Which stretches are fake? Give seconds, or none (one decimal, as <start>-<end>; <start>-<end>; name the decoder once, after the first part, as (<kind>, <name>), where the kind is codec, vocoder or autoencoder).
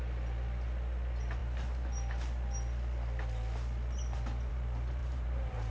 5.0-5.7 (vocoder, BigVGAN v2)